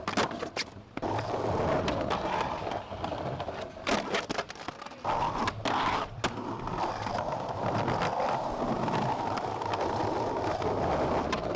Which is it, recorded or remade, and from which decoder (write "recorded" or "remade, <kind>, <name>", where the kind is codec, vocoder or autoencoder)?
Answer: recorded